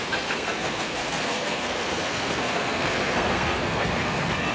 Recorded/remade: remade